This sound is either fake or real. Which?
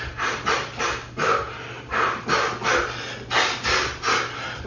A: real